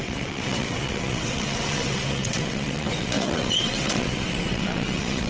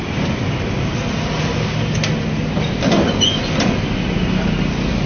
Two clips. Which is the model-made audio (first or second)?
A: first